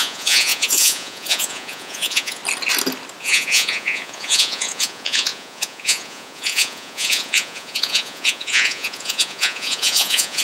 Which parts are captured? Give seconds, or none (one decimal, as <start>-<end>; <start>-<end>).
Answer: 2.4-3.2

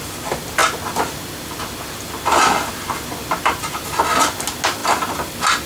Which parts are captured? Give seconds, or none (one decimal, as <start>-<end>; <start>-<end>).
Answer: 0.0-5.7

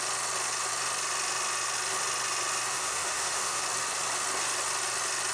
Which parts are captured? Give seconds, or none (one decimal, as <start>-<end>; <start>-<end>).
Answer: 0.0-2.7; 3.6-5.3